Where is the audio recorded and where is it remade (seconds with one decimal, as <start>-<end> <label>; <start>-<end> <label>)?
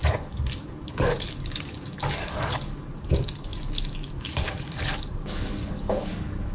0.0-6.5 remade